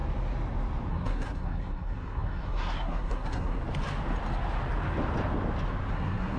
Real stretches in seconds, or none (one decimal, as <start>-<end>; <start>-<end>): 0.0-0.9; 3.6-5.9

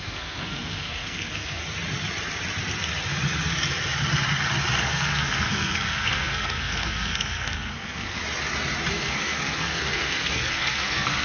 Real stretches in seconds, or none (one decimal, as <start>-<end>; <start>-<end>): 1.6-4.8; 8.2-8.9

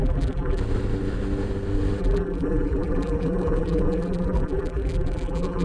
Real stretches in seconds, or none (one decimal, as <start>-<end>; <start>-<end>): 0.6-2.0